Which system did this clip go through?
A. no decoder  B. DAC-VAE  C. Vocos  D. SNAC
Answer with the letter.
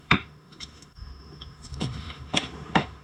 B